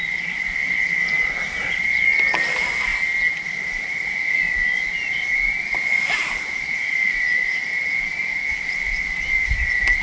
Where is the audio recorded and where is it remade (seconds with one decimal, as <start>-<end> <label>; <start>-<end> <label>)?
0.0-0.6 remade; 0.6-1.6 recorded; 1.6-2.9 remade; 2.9-5.6 recorded; 5.6-10.0 remade